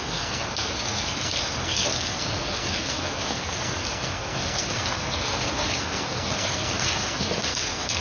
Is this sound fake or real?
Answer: fake